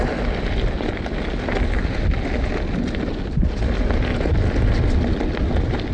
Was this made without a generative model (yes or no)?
yes